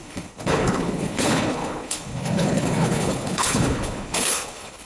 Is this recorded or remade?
remade